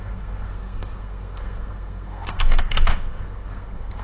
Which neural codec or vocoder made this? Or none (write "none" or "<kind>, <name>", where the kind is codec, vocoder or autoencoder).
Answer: codec, SNAC